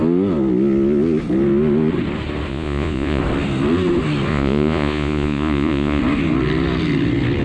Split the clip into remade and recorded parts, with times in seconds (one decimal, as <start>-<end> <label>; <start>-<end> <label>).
0.0-2.5 recorded; 2.5-3.2 remade; 3.2-4.3 recorded; 4.3-6.0 remade; 6.0-7.4 recorded